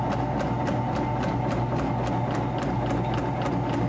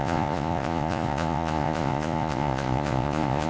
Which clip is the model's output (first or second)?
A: second